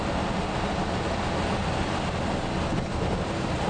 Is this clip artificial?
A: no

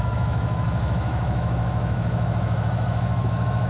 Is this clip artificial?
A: yes